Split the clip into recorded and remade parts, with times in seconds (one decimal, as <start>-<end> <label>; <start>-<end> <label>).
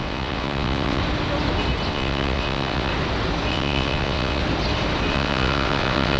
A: 0.0-1.0 remade; 1.0-1.9 recorded; 1.9-2.9 remade; 2.9-3.5 recorded; 3.5-4.4 remade; 4.4-5.1 recorded; 5.1-6.2 remade